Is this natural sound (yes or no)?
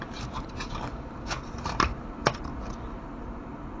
yes